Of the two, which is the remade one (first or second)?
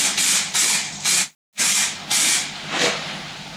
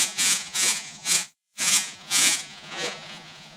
second